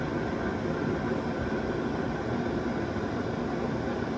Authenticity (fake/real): real